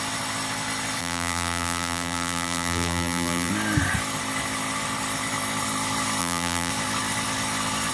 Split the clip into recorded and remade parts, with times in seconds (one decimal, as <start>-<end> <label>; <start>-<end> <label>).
0.0-1.0 recorded; 1.0-3.5 remade; 3.5-6.2 recorded; 6.2-6.7 remade; 6.7-7.9 recorded